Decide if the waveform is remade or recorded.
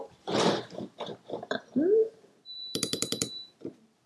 remade